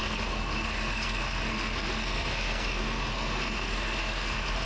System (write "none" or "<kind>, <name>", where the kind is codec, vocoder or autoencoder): codec, SNAC